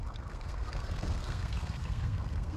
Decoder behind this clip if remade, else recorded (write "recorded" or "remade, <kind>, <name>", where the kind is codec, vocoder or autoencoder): remade, codec, SNAC